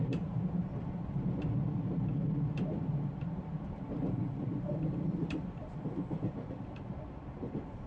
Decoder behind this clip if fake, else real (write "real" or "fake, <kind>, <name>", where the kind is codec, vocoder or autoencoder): fake, vocoder, BigVGAN v2